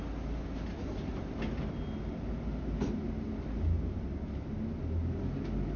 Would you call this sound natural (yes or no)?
yes